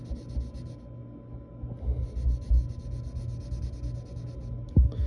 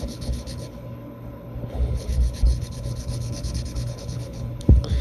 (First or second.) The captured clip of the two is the first